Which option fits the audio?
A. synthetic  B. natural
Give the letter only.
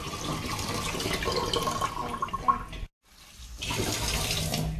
B